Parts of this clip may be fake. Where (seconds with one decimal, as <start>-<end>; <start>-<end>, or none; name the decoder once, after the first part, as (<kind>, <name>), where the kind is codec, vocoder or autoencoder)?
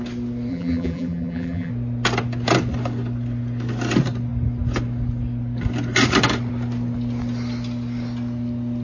0.5-1.7 (vocoder, BigVGAN v2)